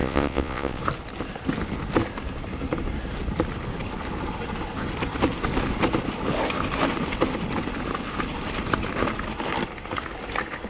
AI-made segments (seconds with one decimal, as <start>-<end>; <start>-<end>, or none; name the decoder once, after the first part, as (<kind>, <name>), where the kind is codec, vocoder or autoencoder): 0.0-0.8 (vocoder, Vocos)